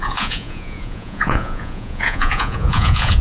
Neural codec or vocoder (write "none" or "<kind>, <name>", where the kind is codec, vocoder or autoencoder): vocoder, Vocos